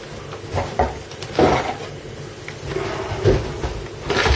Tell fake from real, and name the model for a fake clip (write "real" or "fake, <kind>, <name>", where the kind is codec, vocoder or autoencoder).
real